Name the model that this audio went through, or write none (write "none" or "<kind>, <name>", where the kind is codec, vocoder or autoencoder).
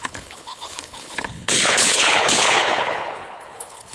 codec, HILCodec